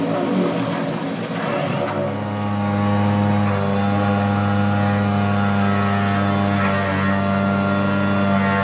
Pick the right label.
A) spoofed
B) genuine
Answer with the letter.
B